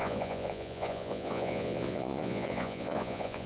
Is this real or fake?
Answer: fake